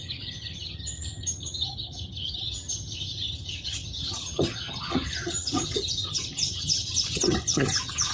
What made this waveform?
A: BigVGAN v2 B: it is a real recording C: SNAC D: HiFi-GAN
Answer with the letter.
D